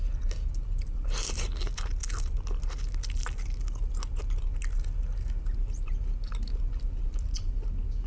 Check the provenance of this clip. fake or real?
real